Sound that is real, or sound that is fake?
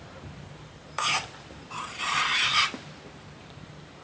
fake